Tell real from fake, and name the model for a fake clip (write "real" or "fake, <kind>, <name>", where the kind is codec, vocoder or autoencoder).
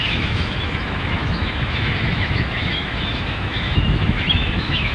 fake, autoencoder, DAC-VAE